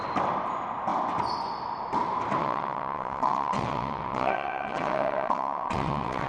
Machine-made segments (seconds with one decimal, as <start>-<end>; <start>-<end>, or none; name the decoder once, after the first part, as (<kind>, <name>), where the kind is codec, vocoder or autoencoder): 2.4-6.3 (vocoder, WaveNeXt)